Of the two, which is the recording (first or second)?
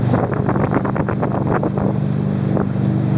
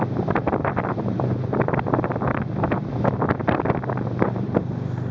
first